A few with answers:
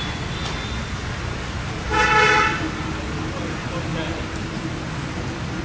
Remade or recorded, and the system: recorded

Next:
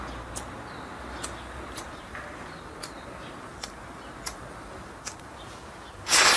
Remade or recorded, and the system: recorded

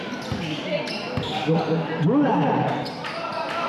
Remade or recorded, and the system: recorded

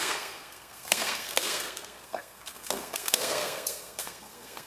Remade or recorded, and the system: remade, codec, SNAC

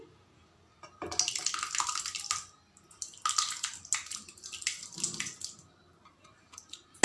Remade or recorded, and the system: recorded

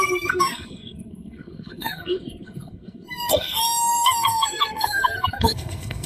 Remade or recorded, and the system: remade, codec, SNAC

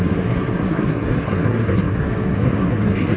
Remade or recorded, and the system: remade, codec, SNAC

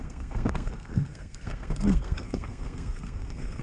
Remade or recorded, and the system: remade, codec, SNAC